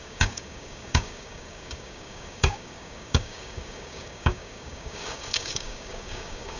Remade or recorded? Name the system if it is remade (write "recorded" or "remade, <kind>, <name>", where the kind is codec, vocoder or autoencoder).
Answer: remade, codec, DAC